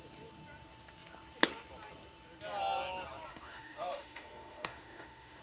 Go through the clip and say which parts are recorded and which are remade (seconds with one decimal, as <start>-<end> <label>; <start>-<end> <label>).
0.0-3.3 recorded; 3.3-5.4 remade